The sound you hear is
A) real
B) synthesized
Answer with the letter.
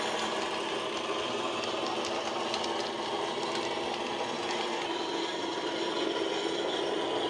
A